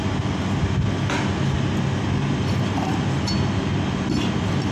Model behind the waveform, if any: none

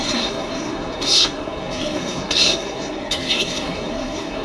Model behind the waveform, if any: codec, SNAC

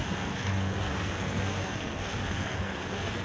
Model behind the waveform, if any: codec, SNAC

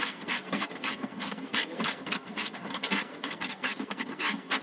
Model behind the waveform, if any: codec, SNAC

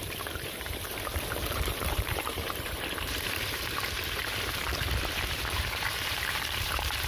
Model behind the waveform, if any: vocoder, BigVGAN v2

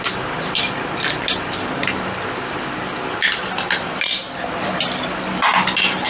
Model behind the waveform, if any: none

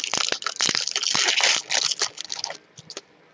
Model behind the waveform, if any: none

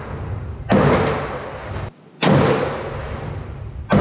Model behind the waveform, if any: none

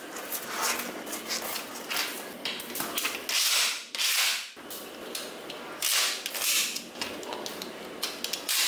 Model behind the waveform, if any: none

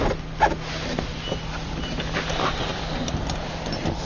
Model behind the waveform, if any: none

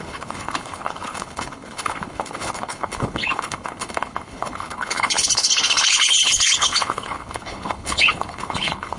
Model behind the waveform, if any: codec, HILCodec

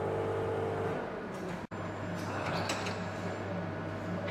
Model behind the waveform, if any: none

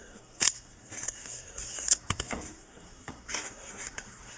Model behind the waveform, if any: codec, SNAC